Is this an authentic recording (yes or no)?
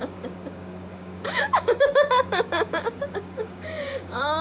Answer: no